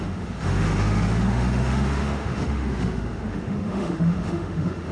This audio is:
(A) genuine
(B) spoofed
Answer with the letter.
B